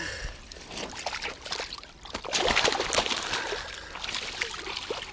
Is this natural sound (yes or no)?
yes